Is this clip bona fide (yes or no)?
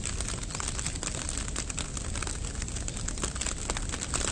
yes